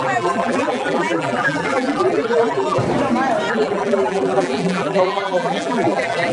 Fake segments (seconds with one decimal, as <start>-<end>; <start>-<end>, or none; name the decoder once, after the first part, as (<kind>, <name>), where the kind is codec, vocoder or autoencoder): 0.0-2.8 (vocoder, BigVGAN v2); 3.5-6.3